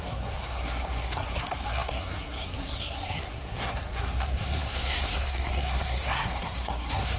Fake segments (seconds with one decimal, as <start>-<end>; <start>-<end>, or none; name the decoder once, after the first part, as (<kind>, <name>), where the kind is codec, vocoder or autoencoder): 0.0-7.2 (codec, SNAC)